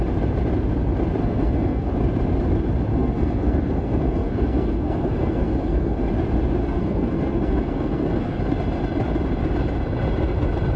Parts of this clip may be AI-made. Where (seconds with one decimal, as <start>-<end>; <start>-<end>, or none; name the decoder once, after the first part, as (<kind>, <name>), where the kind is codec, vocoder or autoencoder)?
1.2-1.9 (codec, SNAC); 2.9-6.1; 6.6-8.4

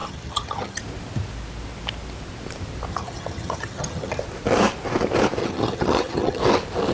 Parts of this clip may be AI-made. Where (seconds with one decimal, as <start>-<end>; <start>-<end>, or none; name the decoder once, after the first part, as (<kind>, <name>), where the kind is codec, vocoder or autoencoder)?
0.0-0.8 (vocoder, HiFi-GAN); 2.9-4.2; 5.4-6.4

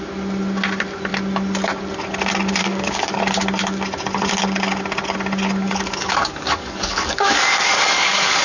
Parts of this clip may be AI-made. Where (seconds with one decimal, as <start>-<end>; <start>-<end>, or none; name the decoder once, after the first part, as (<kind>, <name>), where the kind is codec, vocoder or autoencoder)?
2.6-3.2 (codec, DAC); 5.6-8.4

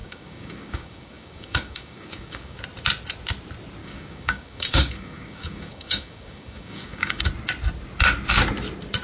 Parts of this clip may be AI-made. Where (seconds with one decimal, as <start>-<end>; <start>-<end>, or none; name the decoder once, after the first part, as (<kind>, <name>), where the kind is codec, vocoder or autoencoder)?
0.0-2.6 (codec, DAC); 3.8-7.2

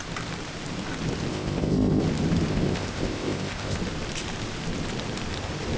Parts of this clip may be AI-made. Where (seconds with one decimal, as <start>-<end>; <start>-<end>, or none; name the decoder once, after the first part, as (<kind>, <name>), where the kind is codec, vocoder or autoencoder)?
1.3-2.0 (codec, ZipCodec); 2.5-3.8

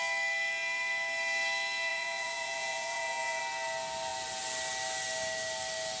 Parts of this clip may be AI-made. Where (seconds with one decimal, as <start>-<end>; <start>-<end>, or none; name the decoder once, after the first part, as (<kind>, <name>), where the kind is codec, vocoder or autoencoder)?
1.9-3.4 (vocoder, Vocos)